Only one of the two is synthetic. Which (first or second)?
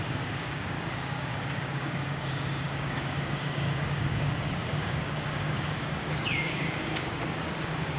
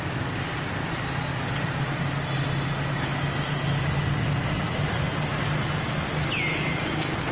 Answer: first